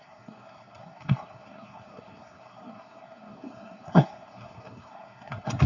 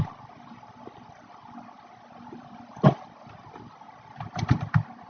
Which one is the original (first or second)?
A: second